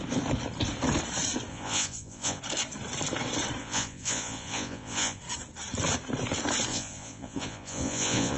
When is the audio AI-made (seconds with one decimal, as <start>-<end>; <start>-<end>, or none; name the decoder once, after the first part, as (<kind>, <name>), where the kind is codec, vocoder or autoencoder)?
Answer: 1.5-2.4 (vocoder, Vocos); 3.6-5.2; 6.7-8.4